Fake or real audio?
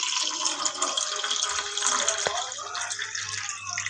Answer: real